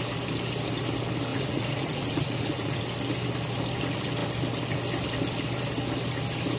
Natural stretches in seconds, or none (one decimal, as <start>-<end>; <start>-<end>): 0.0-1.3; 2.8-6.6